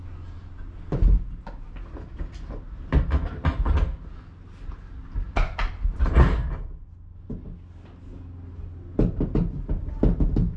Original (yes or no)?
yes